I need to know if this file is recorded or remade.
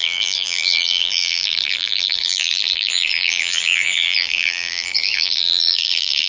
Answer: remade